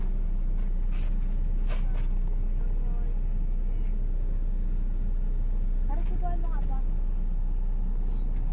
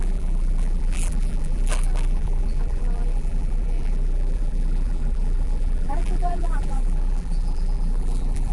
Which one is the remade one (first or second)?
second